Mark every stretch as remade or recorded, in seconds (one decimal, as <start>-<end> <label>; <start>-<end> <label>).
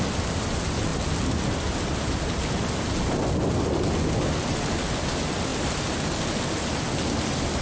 0.0-7.6 recorded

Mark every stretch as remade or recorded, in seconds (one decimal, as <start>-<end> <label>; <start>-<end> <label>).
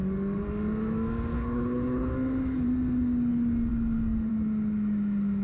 0.0-1.3 recorded; 1.3-2.1 remade; 2.1-5.4 recorded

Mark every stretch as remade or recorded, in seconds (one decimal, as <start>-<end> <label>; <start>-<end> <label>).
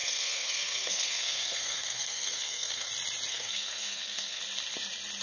0.0-2.9 remade; 2.9-3.3 recorded; 3.3-4.4 remade; 4.4-5.2 recorded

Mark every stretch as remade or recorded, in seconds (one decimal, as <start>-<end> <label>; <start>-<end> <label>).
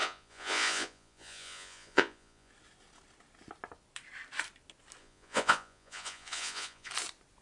0.0-2.5 remade; 2.5-5.0 recorded; 5.0-6.9 remade; 6.9-7.4 recorded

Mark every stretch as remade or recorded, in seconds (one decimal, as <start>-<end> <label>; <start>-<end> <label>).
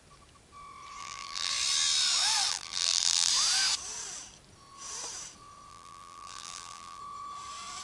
0.0-1.0 recorded; 1.0-1.5 remade; 1.5-2.5 recorded; 2.5-3.3 remade; 3.3-5.7 recorded; 5.7-7.0 remade; 7.0-7.8 recorded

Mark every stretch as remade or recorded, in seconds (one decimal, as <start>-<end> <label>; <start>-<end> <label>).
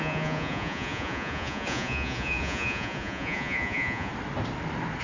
0.0-4.1 remade; 4.1-5.0 recorded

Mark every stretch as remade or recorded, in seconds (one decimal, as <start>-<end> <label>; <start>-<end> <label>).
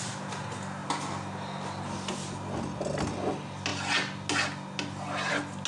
0.0-5.7 recorded